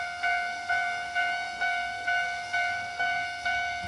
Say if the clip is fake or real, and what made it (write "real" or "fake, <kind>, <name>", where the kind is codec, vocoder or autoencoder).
fake, codec, SNAC